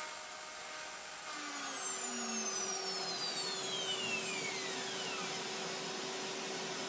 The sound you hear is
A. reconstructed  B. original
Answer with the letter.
B